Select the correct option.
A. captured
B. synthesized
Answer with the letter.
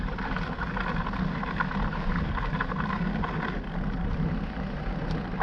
A